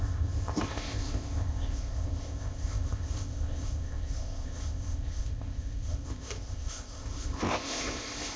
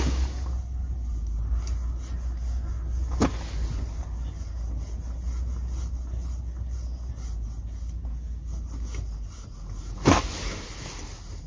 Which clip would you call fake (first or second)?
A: first